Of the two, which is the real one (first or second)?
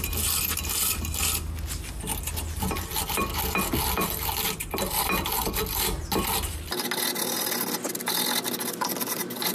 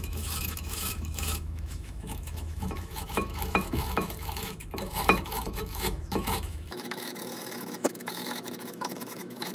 first